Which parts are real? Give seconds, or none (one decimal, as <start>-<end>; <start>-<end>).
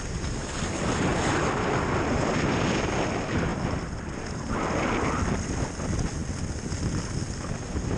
0.0-3.5; 4.2-8.0